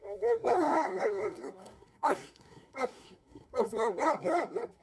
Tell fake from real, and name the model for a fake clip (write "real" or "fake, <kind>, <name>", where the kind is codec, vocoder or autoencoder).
fake, codec, SNAC